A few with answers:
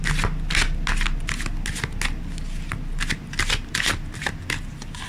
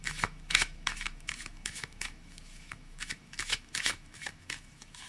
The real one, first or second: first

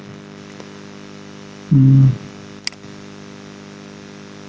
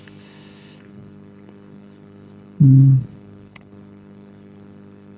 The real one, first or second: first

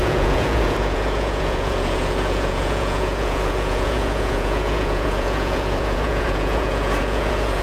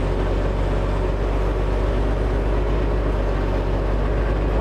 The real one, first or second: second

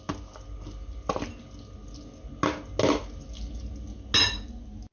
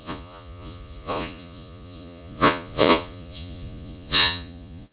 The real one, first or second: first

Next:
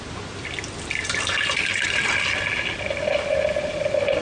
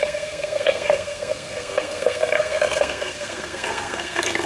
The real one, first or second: first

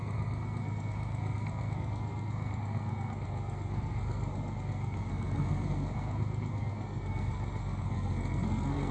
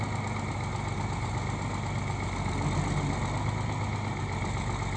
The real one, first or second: second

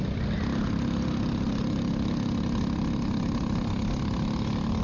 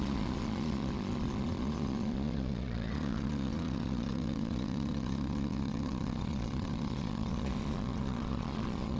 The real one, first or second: first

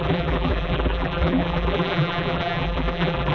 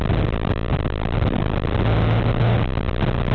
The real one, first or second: second